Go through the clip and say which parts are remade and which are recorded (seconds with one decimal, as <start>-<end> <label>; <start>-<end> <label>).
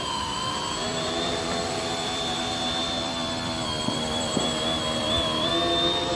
0.0-0.9 recorded; 0.9-4.4 remade; 4.4-5.0 recorded; 5.0-5.5 remade; 5.5-6.1 recorded